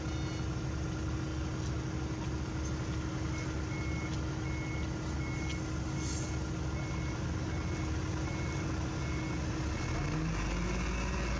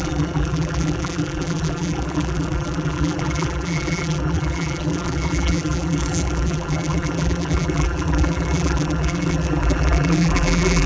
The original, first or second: first